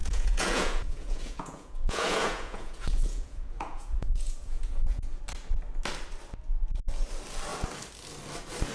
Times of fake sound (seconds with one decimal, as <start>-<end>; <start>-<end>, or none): 0.0-5.2